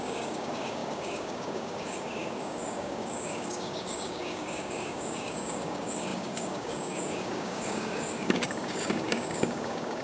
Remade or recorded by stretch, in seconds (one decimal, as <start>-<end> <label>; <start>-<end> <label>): 0.0-10.0 remade